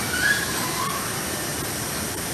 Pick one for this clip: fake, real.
real